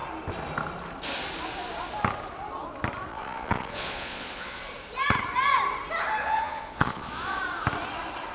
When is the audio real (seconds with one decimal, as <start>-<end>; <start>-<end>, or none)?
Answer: 0.0-3.1; 4.6-6.2; 7.4-8.3